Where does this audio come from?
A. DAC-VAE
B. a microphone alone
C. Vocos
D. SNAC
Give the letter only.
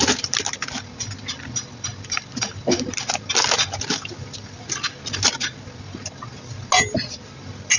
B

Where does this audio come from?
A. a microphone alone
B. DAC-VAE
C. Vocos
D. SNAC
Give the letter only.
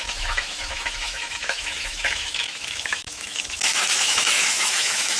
B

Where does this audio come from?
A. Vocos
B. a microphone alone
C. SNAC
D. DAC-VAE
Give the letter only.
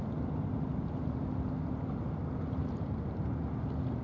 B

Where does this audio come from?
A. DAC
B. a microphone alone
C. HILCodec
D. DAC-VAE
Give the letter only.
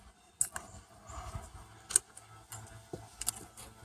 B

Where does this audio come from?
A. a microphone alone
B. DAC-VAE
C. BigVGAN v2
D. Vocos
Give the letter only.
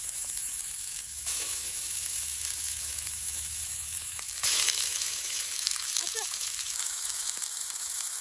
B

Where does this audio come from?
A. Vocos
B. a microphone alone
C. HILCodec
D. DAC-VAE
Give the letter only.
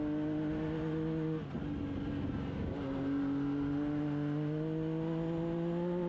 B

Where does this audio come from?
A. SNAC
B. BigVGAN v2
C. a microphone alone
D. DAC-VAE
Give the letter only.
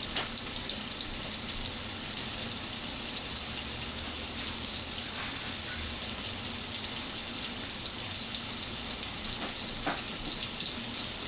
C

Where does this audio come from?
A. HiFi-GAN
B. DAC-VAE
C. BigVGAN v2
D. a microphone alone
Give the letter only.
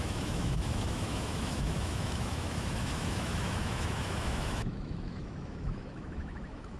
B